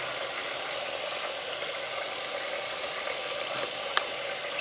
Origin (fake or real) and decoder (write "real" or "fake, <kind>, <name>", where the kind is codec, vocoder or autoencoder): real